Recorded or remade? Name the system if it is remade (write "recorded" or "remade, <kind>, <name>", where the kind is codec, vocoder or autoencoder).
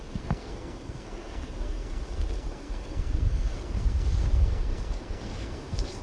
remade, codec, SNAC